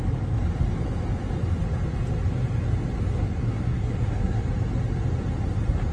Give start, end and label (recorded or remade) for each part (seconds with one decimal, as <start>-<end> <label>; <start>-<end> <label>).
0.0-3.1 recorded; 3.1-4.4 remade; 4.4-5.9 recorded